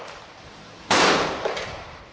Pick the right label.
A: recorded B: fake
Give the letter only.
B